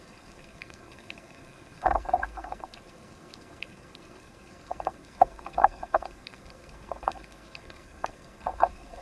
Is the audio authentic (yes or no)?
no